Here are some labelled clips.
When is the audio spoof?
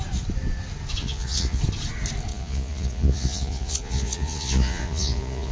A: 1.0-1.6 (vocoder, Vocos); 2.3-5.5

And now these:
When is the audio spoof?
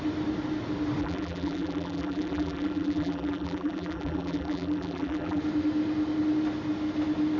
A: 1.0-5.4 (vocoder, BigVGAN v2)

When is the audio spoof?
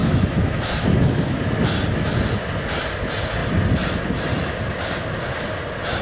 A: 0.0-1.4 (autoencoder, DAC-VAE)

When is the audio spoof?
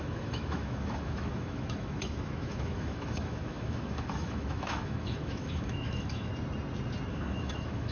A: 0.0-6.3 (autoencoder, DAC-VAE); 7.1-7.9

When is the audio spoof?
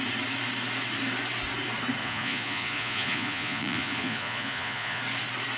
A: 2.0-5.0 (vocoder, Vocos)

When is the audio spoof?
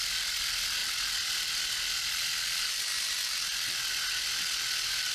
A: none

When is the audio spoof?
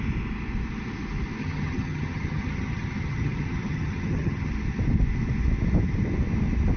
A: 1.4-4.5 (vocoder, HiFi-GAN)